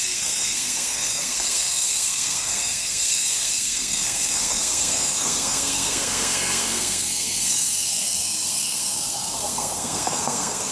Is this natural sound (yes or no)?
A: no